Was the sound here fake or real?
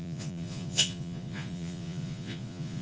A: fake